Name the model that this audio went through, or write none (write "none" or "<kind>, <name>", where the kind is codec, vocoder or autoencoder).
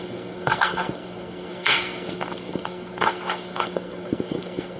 codec, SNAC